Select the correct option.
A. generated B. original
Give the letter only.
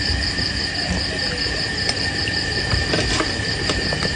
A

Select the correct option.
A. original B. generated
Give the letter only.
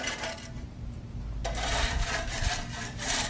B